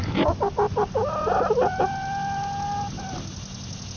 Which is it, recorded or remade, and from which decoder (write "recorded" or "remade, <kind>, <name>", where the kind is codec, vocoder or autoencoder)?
recorded